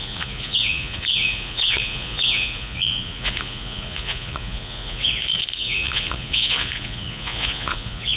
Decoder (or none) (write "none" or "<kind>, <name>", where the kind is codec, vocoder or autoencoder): vocoder, Vocos